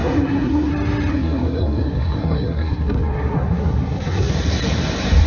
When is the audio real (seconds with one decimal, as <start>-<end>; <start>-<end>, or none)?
0.7-1.1; 4.3-5.3